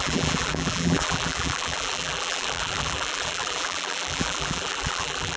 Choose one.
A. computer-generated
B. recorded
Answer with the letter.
A